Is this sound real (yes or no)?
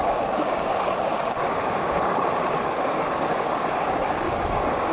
no